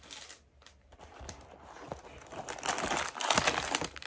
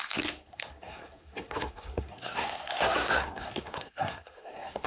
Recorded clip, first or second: first